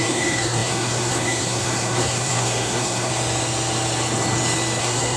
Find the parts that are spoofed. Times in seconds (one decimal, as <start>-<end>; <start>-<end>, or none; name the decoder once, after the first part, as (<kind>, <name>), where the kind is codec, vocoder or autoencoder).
0.0-3.1 (codec, SNAC); 4.8-5.2